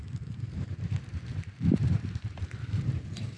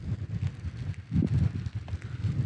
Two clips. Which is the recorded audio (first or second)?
second